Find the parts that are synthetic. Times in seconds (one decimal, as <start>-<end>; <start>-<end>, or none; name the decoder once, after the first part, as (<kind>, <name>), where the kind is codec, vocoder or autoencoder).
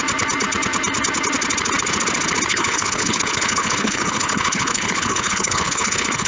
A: 2.5-6.3 (codec, HILCodec)